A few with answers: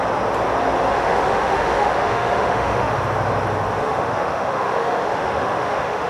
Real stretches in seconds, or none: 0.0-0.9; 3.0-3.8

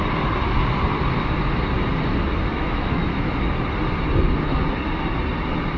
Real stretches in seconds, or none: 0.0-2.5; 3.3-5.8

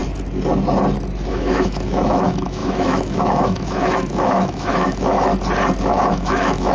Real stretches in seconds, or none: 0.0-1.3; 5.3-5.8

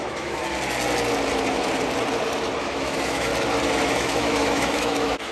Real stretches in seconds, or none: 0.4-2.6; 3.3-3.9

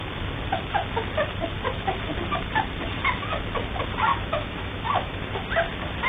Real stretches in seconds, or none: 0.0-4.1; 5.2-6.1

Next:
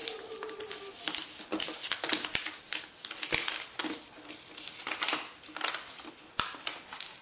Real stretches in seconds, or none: 0.0-7.2